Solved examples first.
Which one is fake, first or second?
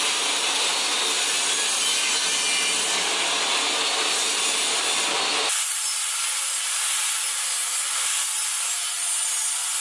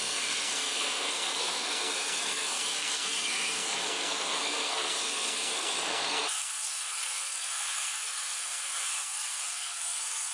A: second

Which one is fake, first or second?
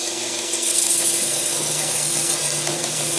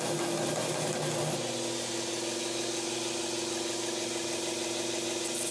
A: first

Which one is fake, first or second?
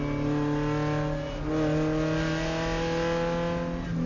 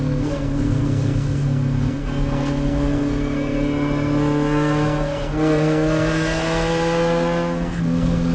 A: second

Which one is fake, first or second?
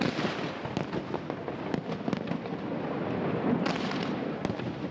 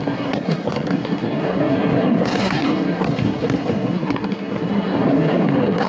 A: second